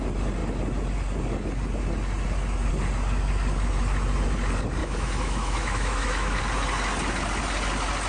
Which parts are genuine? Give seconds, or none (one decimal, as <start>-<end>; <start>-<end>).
0.0-4.8; 6.4-8.1